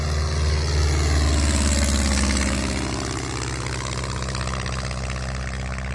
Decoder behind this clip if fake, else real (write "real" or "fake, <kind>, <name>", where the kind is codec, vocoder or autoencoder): real